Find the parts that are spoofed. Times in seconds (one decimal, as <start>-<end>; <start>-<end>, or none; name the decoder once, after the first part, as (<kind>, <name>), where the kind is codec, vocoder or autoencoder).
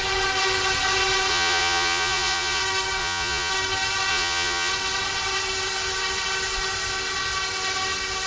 1.3-2.6 (vocoder, Vocos); 3.0-3.5; 4.1-4.7